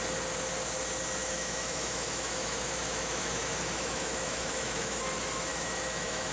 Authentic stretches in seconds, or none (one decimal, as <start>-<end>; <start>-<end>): 0.0-1.2; 5.0-5.5